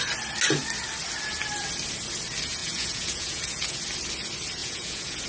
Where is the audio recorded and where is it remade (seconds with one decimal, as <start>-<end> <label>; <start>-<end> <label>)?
0.0-2.6 recorded; 2.6-3.8 remade; 3.8-4.6 recorded; 4.6-5.3 remade